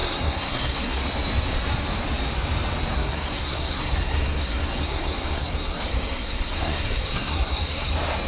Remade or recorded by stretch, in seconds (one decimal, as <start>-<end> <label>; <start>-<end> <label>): 0.0-1.0 remade; 1.0-2.9 recorded; 2.9-7.9 remade; 7.9-8.3 recorded